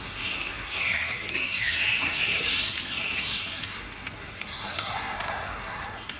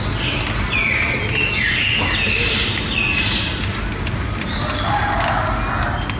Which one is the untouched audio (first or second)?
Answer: second